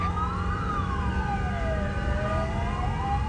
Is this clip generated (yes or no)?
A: no